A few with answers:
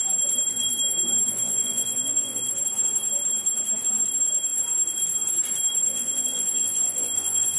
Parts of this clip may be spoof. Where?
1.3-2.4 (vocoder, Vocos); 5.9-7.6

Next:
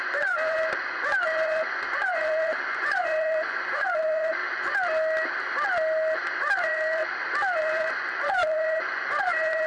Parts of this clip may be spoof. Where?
0.0-4.4 (vocoder, Vocos); 6.3-7.0; 7.6-9.7